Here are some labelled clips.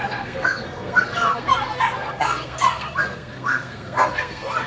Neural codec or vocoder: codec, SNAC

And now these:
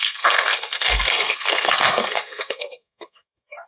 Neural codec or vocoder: codec, SNAC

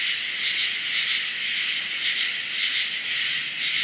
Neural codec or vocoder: none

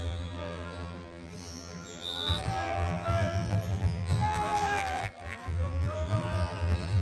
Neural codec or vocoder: vocoder, BigVGAN v2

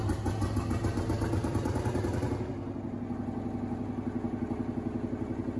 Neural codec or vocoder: none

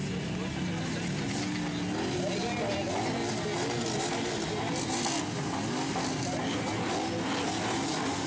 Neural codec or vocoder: none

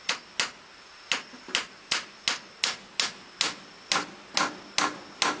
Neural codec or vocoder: none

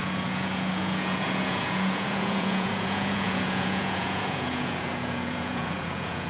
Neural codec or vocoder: vocoder, Vocos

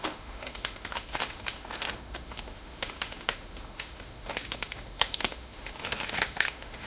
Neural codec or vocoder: autoencoder, DAC-VAE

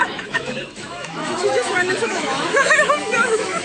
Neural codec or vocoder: autoencoder, DAC-VAE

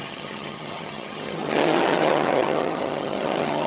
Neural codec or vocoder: vocoder, HiFi-GAN